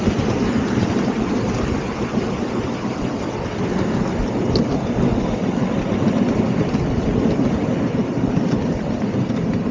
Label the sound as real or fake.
real